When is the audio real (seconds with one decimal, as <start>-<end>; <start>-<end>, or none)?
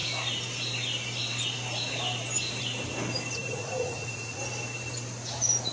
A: 0.0-3.4; 4.4-5.7